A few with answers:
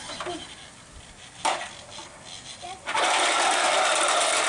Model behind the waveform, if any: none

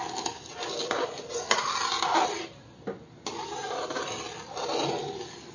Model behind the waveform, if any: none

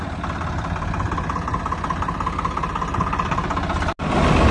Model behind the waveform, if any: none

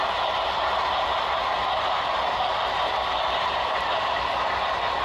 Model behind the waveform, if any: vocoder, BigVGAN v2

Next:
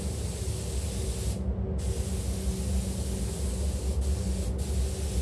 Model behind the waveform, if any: none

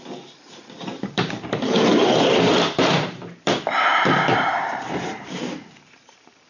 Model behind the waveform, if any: vocoder, BigVGAN v2